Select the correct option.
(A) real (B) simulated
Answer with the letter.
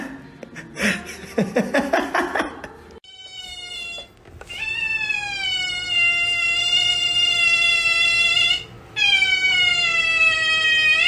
A